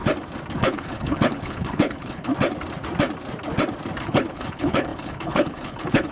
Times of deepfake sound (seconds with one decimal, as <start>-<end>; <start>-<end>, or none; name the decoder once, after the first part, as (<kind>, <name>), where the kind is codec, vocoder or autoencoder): 0.6-2.3 (codec, HILCodec); 4.0-6.1